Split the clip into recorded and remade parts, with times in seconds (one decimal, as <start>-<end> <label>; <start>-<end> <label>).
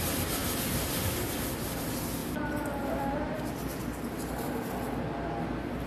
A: 0.0-0.4 recorded; 0.4-1.8 remade; 1.8-2.2 recorded; 2.2-3.8 remade; 3.8-5.9 recorded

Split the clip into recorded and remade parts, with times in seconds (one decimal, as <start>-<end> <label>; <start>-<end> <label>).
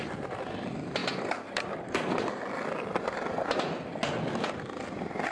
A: 0.0-1.0 recorded; 1.0-4.2 remade; 4.2-5.3 recorded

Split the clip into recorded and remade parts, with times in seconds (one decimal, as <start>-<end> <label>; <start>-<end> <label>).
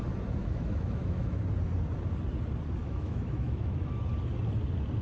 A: 0.0-0.4 recorded; 0.4-1.4 remade; 1.4-2.8 recorded; 2.8-4.0 remade; 4.0-5.0 recorded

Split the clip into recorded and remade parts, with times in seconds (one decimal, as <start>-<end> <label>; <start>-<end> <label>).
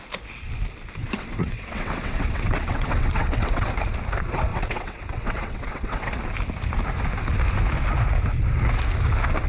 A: 0.0-1.0 recorded; 1.0-3.7 remade; 3.7-4.5 recorded; 4.5-6.1 remade; 6.1-9.5 recorded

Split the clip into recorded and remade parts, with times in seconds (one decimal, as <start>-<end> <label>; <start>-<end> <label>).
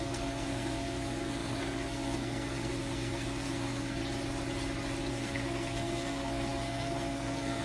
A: 0.0-4.0 remade; 4.0-5.1 recorded; 5.1-7.6 remade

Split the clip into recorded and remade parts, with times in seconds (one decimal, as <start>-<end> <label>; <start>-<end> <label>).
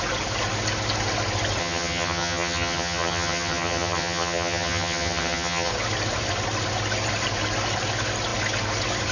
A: 0.0-1.6 recorded; 1.6-5.7 remade; 5.7-9.1 recorded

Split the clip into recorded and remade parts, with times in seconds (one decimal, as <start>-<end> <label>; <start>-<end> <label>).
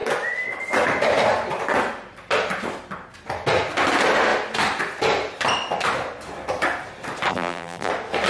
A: 0.0-7.3 recorded; 7.3-7.9 remade; 7.9-8.3 recorded